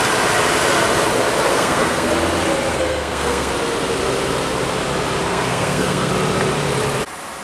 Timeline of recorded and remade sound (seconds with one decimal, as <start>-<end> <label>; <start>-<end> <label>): 0.0-1.5 recorded; 1.5-2.1 remade; 2.1-2.7 recorded; 2.7-3.5 remade; 3.5-5.3 recorded; 5.3-6.1 remade; 6.1-7.4 recorded